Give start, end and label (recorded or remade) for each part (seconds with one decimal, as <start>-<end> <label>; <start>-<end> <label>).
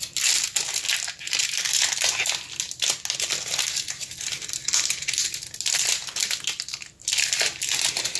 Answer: 0.0-8.2 recorded